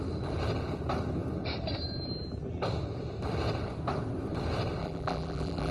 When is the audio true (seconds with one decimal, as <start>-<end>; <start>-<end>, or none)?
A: 0.0-4.8